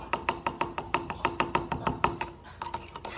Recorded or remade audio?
recorded